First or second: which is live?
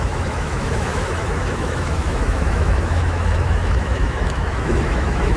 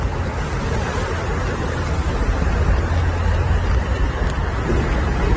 second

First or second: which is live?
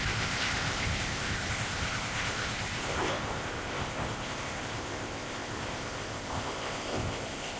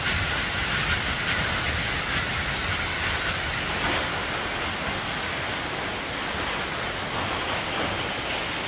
second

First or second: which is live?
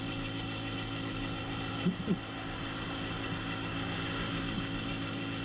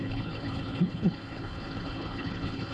first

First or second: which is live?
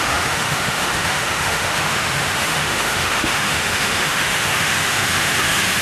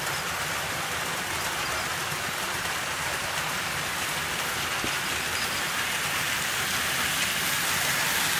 second